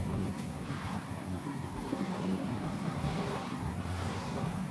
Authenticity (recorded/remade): remade